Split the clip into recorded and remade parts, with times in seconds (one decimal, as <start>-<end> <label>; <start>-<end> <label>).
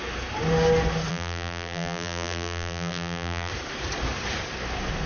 0.0-1.1 recorded; 1.1-3.5 remade; 3.5-5.1 recorded